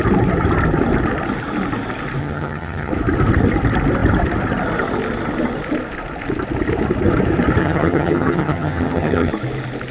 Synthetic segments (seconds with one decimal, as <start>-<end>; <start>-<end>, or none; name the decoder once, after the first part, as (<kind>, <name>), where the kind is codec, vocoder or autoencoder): 2.2-2.9 (vocoder, HiFi-GAN); 7.6-9.3